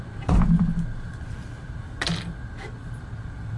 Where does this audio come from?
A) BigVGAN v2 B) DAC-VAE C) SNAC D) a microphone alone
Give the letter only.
D